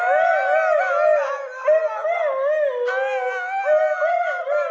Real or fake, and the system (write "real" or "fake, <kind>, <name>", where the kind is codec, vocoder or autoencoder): real